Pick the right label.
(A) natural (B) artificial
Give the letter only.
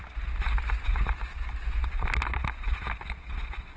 A